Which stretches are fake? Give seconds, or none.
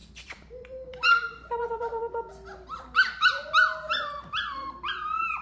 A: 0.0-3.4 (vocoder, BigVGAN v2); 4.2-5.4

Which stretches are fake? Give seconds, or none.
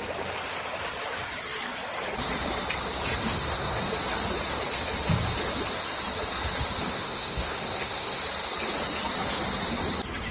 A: 3.3-3.9 (codec, SNAC); 6.9-8.2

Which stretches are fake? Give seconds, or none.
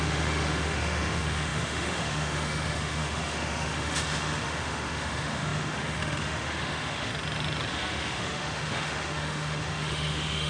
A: 0.0-7.1 (autoencoder, DAC-VAE); 7.7-10.5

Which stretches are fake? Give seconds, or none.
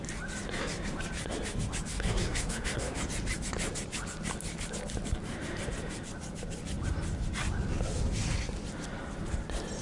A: 1.9-3.0 (codec, SNAC)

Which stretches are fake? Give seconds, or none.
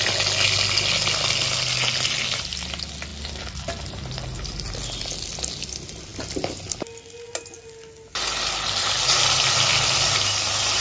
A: none